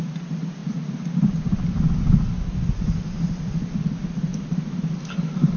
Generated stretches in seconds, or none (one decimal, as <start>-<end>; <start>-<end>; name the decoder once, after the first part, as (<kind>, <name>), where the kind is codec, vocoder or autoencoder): 4.3-4.9 (vocoder, BigVGAN v2)